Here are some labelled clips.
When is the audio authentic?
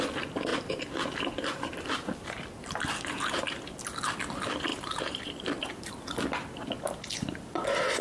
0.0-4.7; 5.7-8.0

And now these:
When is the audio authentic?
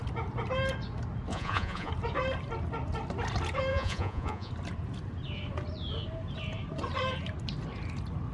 0.0-1.3; 1.9-3.7; 4.5-8.3